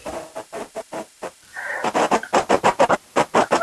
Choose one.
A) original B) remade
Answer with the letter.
B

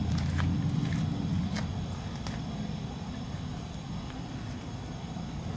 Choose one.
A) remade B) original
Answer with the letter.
B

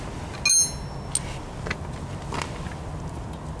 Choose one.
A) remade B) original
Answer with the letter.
B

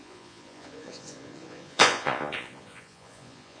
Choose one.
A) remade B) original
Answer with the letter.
A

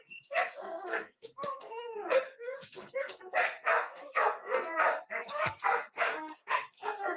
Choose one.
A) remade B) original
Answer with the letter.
A